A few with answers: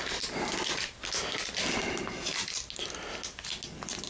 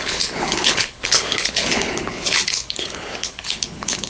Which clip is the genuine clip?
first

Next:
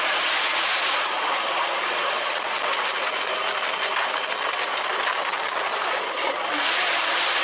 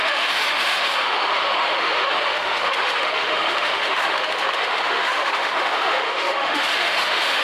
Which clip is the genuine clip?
first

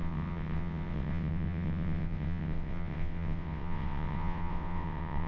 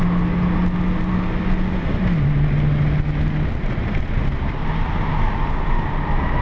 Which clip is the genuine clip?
second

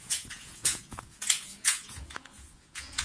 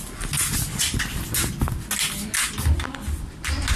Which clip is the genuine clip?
second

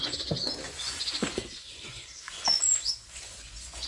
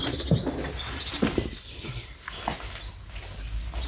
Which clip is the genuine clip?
second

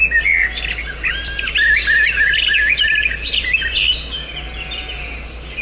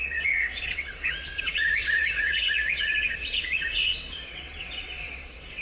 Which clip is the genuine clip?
first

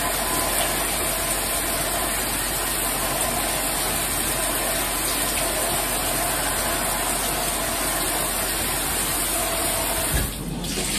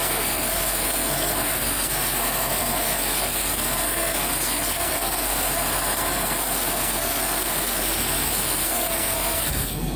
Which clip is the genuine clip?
first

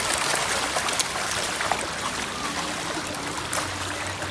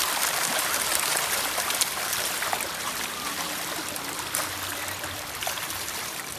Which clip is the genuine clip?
first